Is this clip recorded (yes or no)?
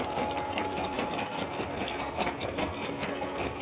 no